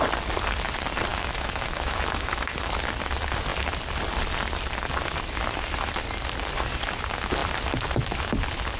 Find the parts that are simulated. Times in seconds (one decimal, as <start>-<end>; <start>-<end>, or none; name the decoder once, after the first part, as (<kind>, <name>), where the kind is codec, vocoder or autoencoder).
1.1-2.5 (autoencoder, DAC-VAE)